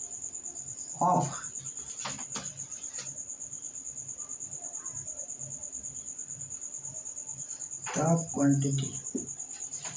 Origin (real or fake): real